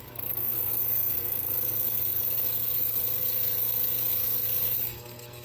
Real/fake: fake